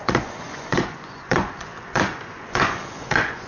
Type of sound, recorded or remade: remade